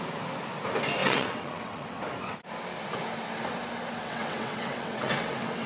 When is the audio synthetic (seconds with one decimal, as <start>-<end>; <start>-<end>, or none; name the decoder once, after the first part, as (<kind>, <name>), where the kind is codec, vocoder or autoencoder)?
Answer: 1.0-2.0 (vocoder, WaveNeXt); 4.0-5.7